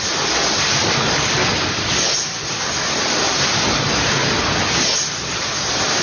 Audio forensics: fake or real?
real